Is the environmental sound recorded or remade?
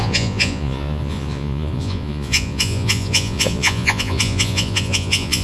remade